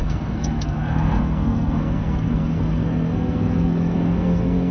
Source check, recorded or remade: remade